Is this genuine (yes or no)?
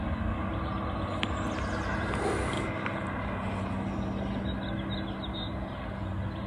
yes